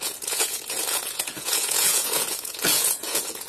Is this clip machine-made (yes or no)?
yes